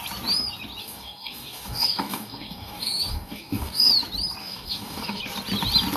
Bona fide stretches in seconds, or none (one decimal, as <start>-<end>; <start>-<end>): 0.0-0.8; 3.9-4.4; 5.2-6.0